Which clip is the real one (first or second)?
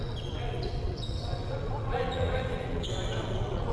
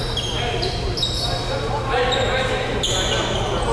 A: second